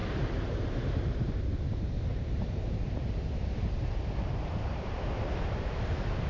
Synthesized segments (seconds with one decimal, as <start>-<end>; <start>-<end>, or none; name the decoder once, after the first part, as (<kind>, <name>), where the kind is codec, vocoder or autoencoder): 0.0-1.3 (vocoder, BigVGAN v2); 2.1-5.3